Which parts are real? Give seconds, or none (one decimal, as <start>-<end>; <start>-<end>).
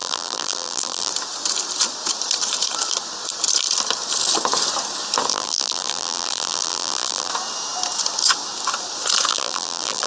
1.1-5.3; 7.3-9.3